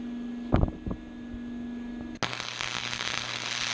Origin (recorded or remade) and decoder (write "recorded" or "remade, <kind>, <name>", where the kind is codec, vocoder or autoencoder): recorded